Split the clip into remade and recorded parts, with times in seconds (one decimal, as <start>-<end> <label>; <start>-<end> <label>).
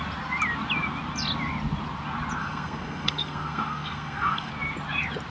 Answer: 0.0-2.4 recorded; 2.4-4.5 remade; 4.5-5.3 recorded